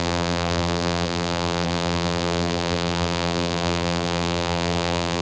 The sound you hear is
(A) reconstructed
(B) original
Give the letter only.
A